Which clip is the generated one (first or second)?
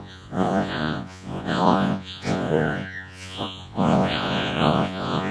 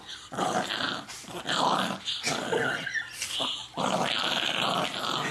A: first